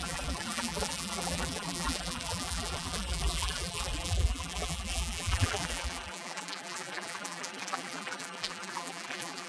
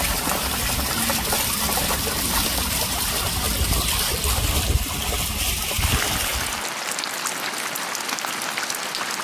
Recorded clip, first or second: second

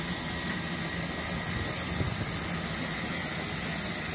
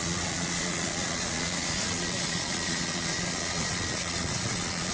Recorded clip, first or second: first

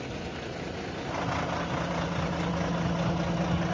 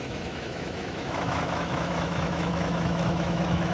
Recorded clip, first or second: first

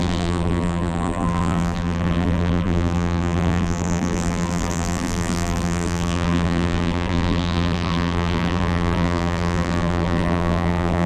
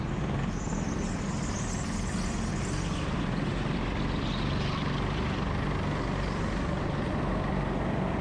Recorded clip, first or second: second